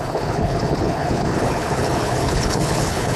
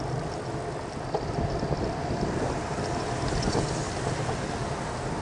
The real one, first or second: second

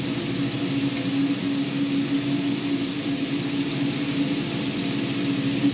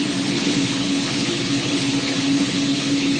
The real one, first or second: first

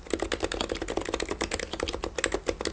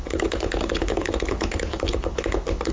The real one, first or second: first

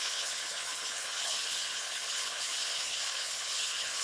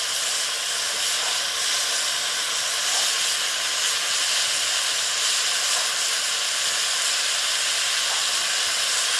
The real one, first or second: second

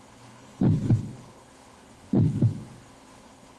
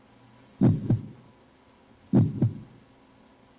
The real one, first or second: second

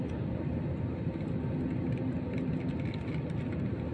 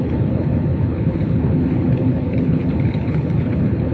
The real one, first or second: first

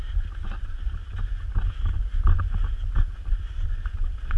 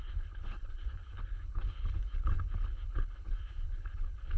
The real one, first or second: first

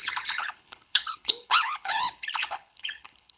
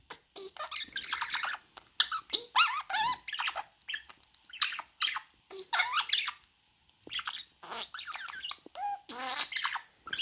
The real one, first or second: second